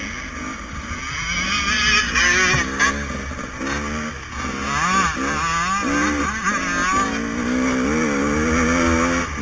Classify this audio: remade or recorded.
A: recorded